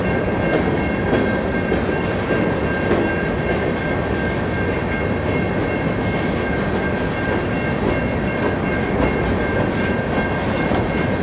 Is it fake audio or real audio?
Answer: real